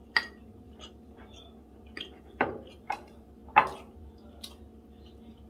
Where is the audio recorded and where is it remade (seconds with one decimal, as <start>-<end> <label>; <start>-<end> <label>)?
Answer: 0.0-2.2 recorded; 2.2-3.4 remade; 3.4-5.5 recorded